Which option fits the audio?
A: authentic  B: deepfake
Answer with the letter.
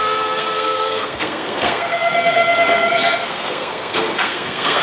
B